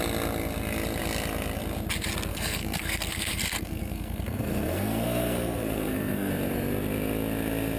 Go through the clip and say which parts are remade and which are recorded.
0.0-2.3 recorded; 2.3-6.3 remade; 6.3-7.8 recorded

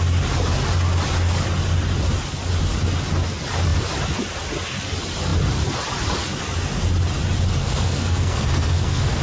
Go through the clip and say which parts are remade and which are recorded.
0.0-7.5 recorded; 7.5-9.2 remade

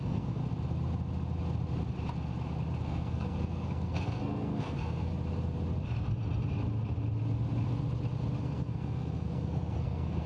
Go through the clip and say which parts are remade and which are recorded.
0.0-0.4 remade; 0.4-2.8 recorded; 2.8-5.1 remade; 5.1-8.4 recorded; 8.4-10.3 remade

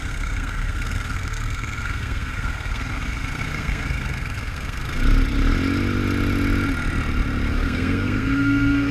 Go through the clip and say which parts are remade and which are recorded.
0.0-5.0 remade; 5.0-7.5 recorded; 7.5-8.9 remade

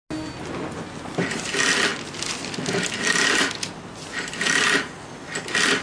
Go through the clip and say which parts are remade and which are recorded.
0.0-5.8 recorded

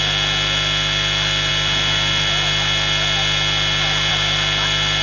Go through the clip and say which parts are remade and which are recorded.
0.0-5.0 recorded

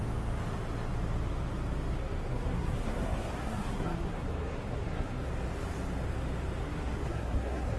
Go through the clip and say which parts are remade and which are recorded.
0.0-2.3 recorded; 2.3-5.3 remade; 5.3-6.6 recorded; 6.6-7.8 remade

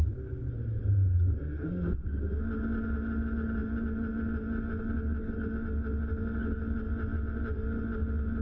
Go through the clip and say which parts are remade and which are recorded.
0.0-8.4 recorded